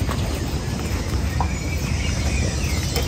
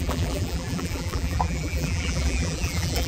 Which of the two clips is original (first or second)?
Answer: first